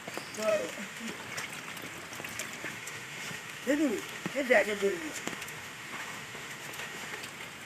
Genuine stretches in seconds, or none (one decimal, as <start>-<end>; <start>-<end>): 0.0-0.5; 1.1-2.6; 7.2-7.7